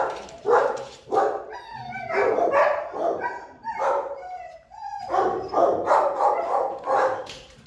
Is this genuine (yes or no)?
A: no